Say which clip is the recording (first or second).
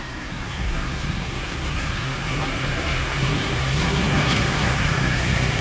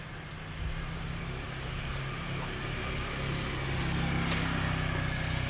second